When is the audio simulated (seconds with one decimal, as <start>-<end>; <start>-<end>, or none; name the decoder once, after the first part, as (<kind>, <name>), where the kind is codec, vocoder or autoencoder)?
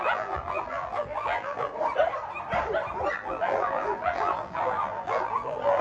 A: 0.0-1.7 (vocoder, BigVGAN v2); 3.1-5.8